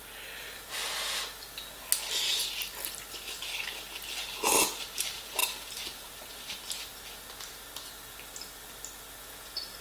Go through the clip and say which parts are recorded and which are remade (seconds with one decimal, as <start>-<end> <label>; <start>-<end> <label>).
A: 0.0-5.4 recorded; 5.4-6.6 remade; 6.6-9.8 recorded